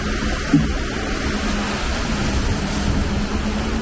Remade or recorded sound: recorded